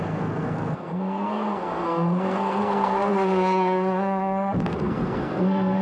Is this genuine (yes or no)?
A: no